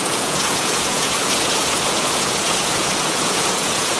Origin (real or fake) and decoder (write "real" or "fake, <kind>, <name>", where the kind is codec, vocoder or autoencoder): fake, vocoder, Vocos